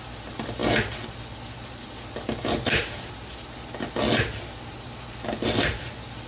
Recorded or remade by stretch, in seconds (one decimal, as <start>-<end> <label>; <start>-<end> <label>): 0.0-6.3 recorded